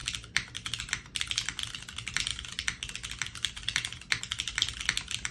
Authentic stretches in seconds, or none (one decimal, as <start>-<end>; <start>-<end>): 0.0-5.3